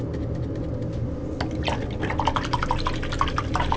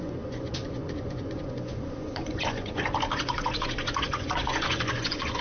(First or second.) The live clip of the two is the first